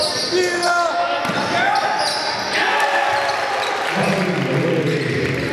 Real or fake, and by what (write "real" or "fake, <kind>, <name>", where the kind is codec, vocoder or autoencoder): real